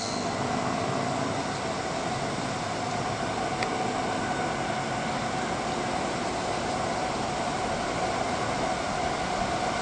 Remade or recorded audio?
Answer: recorded